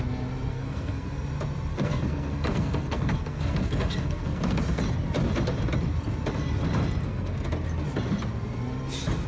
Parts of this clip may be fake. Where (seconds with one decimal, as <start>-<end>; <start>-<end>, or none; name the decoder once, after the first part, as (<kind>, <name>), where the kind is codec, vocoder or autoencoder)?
0.5-1.2 (codec, SNAC); 1.7-4.8; 7.0-7.5